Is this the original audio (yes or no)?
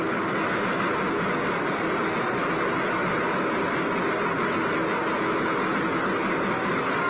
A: yes